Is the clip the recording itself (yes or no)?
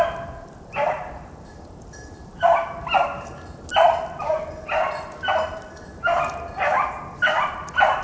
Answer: yes